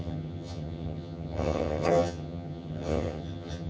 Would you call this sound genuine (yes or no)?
no